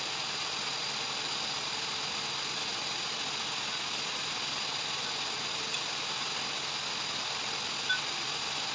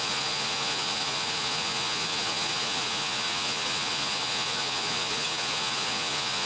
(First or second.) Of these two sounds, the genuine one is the first